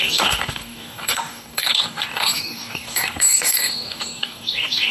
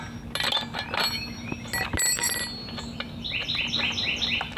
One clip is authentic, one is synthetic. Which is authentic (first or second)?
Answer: second